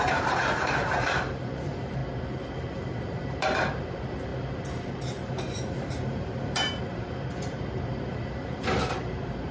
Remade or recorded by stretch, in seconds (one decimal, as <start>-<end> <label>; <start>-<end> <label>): 0.0-2.0 remade; 2.0-2.5 recorded; 2.5-9.5 remade